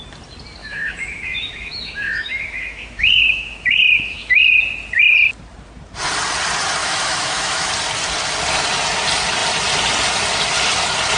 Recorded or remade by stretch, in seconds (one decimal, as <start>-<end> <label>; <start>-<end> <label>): 0.0-0.6 recorded; 0.6-4.6 remade; 4.6-6.8 recorded; 6.8-7.7 remade; 7.7-11.2 recorded